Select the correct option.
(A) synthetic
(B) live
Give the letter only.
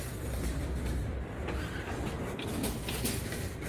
B